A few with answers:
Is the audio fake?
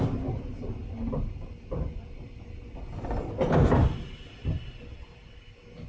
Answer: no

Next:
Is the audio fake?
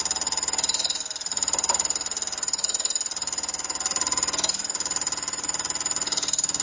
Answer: no